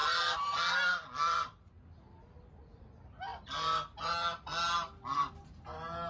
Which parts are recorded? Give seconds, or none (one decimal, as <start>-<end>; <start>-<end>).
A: 0.0-6.1